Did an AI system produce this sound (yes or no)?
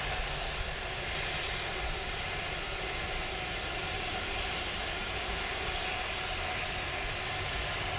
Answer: no